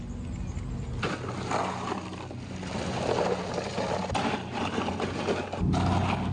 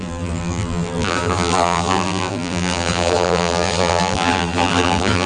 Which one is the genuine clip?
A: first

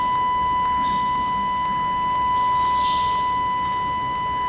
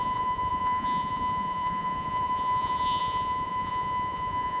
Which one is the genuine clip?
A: first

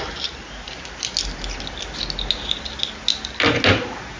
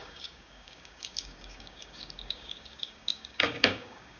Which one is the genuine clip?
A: first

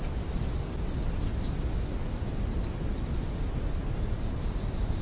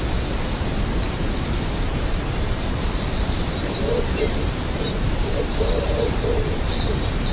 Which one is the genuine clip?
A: first